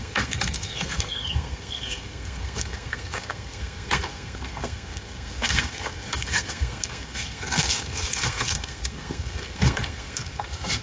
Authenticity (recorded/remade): remade